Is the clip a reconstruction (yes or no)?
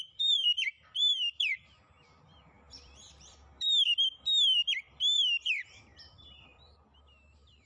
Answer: yes